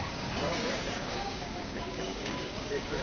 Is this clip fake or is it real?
fake